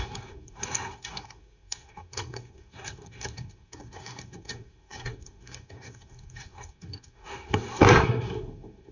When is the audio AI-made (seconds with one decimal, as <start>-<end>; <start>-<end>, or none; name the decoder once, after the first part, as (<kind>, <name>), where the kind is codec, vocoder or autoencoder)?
0.0-8.9 (codec, SNAC)